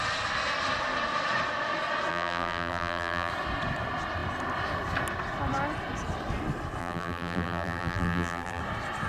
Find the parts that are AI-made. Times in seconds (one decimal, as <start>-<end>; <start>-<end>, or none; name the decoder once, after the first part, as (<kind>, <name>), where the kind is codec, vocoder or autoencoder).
2.1-3.3 (vocoder, BigVGAN v2); 6.8-8.6